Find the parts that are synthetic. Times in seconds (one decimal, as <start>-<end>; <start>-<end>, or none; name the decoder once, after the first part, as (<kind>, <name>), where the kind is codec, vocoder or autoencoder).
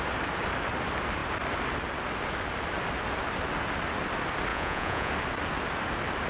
4.5-5.1 (vocoder, Vocos)